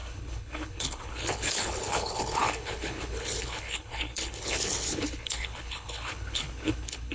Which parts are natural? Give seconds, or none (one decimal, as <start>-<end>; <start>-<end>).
none